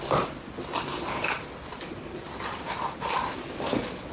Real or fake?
real